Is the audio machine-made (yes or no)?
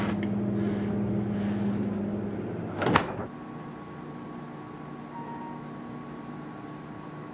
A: no